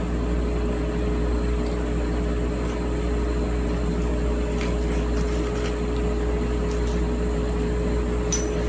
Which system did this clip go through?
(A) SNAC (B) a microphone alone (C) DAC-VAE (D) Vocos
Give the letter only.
B